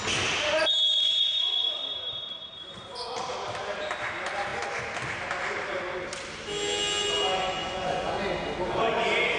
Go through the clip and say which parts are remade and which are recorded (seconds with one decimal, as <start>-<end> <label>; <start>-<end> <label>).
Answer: 0.0-0.9 recorded; 0.9-1.8 remade; 1.8-7.6 recorded; 7.6-8.2 remade; 8.2-9.4 recorded